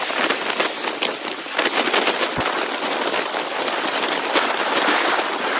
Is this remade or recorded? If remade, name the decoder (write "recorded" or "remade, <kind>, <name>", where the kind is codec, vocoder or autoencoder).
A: recorded